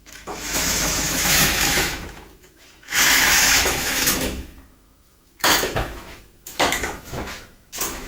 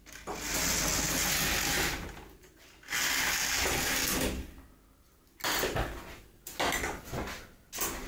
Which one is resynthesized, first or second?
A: first